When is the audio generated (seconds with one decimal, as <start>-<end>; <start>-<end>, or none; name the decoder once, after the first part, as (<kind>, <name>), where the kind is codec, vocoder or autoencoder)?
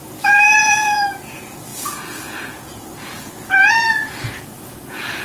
0.0-5.2 (vocoder, Vocos)